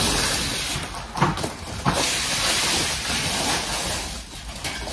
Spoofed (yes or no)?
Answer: no